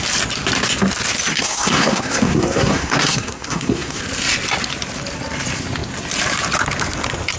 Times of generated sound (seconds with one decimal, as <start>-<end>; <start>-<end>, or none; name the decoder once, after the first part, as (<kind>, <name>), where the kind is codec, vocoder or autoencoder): 1.3-4.0 (codec, SNAC)